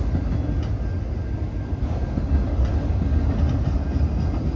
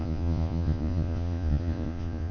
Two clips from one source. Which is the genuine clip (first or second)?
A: first